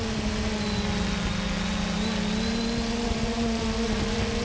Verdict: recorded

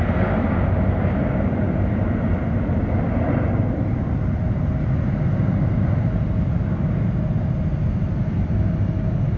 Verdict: recorded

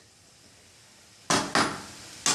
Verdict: recorded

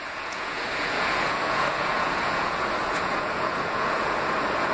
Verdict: remade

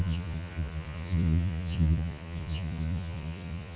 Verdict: remade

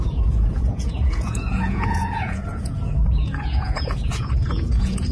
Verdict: remade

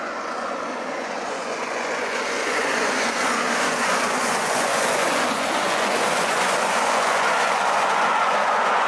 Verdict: remade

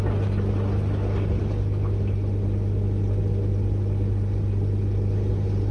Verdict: recorded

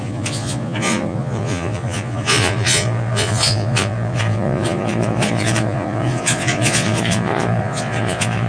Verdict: remade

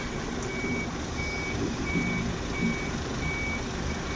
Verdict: recorded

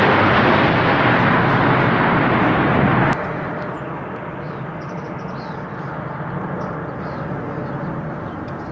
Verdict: recorded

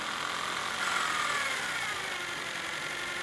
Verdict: recorded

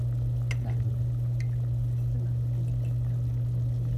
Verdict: recorded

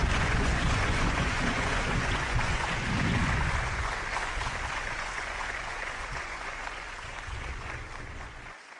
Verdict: remade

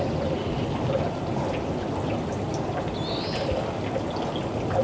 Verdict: recorded